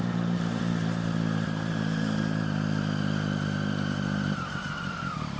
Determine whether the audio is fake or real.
real